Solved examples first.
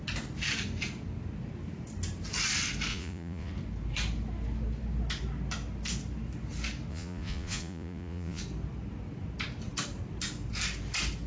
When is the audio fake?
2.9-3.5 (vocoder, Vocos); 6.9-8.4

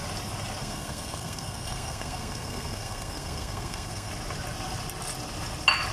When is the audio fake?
0.6-4.1 (codec, SNAC)

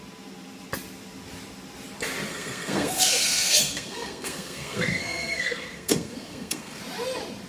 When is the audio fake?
2.3-6.8 (codec, SNAC)

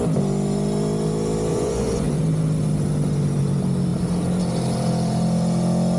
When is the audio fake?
1.5-2.2 (vocoder, Vocos)

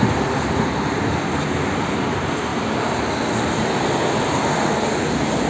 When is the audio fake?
none

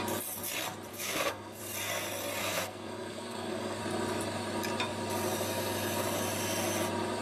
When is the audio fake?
0.9-1.6 (codec, SNAC); 2.4-3.8